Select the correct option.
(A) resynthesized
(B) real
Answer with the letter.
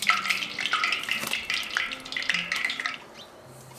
B